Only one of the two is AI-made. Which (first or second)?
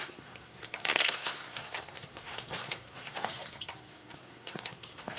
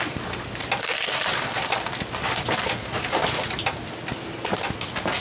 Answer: first